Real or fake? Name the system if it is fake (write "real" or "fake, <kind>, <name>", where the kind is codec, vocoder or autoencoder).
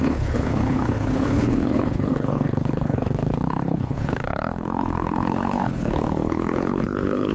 fake, codec, HILCodec